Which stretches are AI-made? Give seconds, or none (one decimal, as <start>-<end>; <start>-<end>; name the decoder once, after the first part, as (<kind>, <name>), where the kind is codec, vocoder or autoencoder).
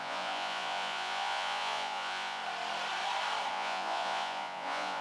0.0-2.4 (vocoder, Vocos); 3.5-5.0